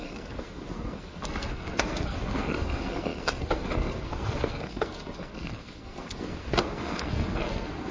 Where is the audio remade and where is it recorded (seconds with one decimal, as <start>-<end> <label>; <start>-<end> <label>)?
0.0-7.9 remade